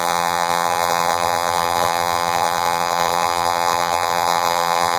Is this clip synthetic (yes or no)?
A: yes